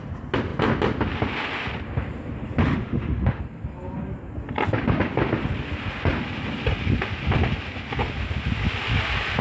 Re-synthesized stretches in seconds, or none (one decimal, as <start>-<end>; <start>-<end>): 2.6-3.4